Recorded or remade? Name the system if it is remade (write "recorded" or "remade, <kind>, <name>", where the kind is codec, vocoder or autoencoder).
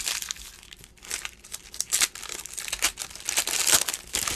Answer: recorded